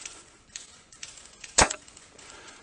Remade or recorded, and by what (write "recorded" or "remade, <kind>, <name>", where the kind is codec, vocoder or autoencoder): remade, vocoder, Vocos